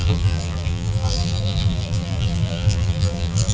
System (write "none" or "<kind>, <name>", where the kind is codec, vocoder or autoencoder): vocoder, BigVGAN v2